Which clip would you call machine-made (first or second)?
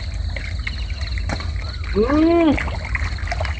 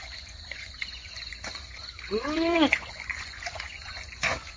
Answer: second